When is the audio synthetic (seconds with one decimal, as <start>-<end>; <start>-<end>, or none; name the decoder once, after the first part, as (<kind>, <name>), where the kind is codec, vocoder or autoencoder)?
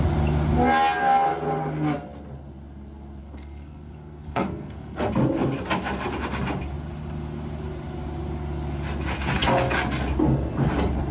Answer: 3.2-5.0 (codec, SNAC)